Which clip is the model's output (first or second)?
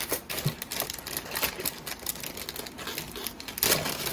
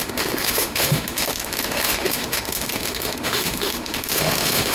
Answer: second